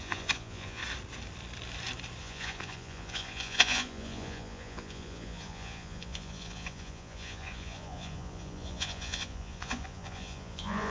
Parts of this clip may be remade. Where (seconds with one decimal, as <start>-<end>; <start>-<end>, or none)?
0.0-0.8; 2.2-10.9

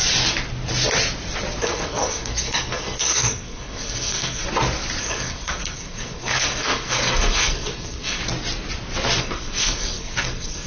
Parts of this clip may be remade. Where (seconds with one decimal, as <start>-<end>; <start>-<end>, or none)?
1.6-4.4; 5.0-8.2; 9.2-10.7

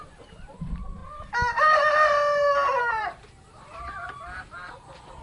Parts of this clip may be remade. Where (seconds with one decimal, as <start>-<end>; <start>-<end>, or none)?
0.0-1.0; 2.8-5.2

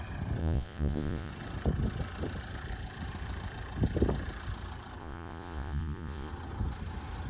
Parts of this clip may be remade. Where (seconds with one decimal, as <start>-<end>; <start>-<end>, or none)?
0.4-1.3; 5.0-6.3

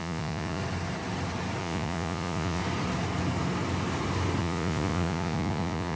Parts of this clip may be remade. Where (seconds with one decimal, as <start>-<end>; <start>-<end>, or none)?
0.0-0.6; 1.6-2.6; 4.4-6.0

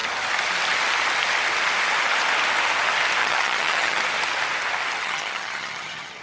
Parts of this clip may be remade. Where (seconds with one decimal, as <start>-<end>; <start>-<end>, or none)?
3.2-4.0; 5.0-6.2

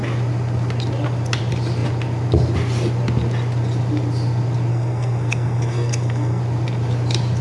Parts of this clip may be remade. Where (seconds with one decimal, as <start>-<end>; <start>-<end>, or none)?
4.7-6.4